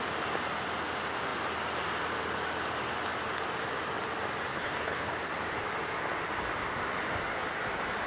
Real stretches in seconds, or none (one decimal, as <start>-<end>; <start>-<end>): 0.0-4.5; 5.1-8.1